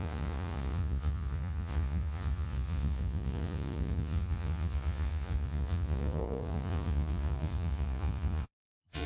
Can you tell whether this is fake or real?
fake